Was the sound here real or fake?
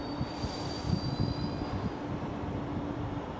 real